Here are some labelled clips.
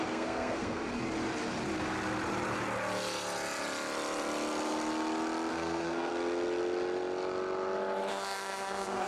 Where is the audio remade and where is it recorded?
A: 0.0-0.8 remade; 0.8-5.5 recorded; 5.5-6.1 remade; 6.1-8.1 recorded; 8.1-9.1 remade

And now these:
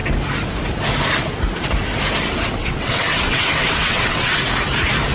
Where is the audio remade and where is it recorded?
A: 0.0-2.6 recorded; 2.6-4.4 remade; 4.4-5.1 recorded